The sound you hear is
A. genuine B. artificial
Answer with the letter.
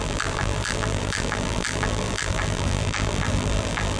B